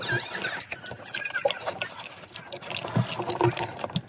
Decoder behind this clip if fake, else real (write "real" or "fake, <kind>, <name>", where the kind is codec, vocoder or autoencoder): real